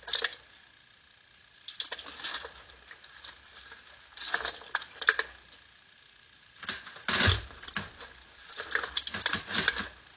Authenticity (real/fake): real